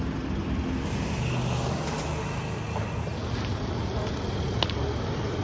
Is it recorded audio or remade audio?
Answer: recorded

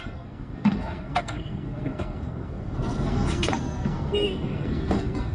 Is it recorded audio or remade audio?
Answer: remade